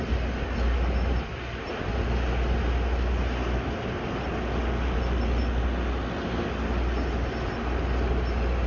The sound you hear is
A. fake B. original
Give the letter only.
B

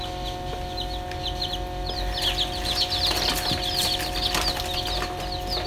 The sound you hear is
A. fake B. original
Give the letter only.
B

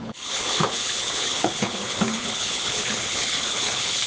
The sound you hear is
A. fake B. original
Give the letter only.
A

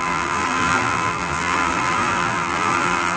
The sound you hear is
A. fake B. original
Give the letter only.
A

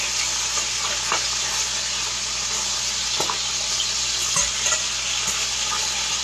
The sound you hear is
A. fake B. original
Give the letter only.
B